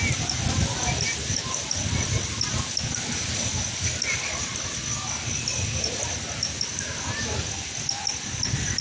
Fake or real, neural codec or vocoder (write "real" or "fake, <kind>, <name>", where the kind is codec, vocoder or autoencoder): real